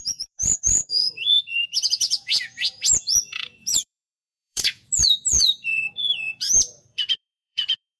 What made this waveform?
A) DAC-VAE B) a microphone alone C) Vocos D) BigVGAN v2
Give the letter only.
C